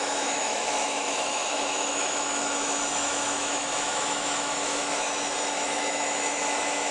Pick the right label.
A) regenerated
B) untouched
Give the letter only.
A